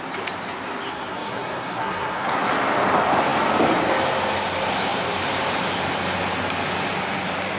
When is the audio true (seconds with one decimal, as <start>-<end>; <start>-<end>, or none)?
0.0-0.9; 2.5-7.6